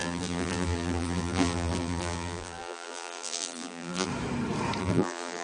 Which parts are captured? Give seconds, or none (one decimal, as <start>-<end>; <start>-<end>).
4.1-4.8